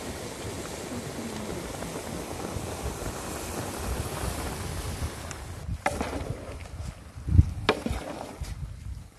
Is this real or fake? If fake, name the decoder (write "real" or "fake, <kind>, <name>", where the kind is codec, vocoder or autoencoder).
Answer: real